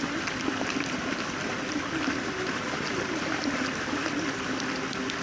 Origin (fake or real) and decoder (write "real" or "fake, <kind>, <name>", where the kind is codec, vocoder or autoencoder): real